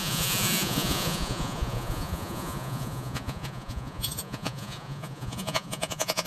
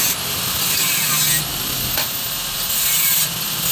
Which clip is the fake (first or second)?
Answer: first